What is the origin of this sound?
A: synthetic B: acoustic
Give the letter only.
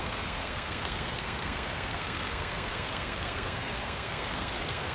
A